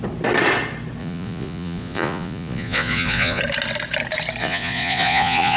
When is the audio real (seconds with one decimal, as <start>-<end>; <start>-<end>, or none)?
0.0-1.0; 3.4-4.4